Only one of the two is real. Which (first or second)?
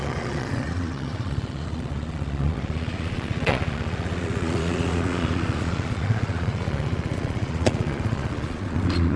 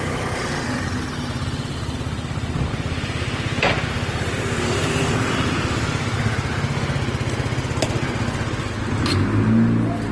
second